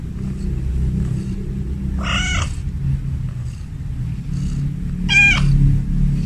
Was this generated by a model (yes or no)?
no